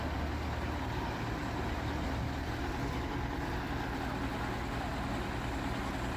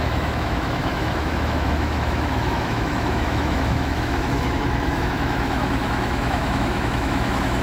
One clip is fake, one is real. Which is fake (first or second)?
second